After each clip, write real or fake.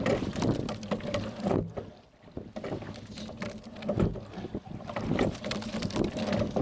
real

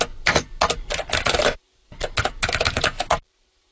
real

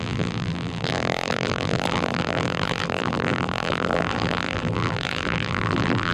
fake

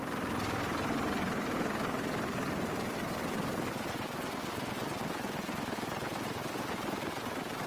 real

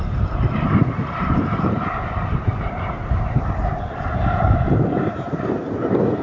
fake